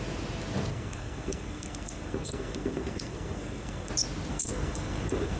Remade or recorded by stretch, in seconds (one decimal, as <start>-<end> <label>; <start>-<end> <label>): 0.0-0.7 recorded; 0.7-3.9 remade; 3.9-4.3 recorded; 4.3-5.4 remade